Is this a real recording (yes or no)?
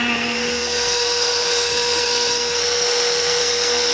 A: no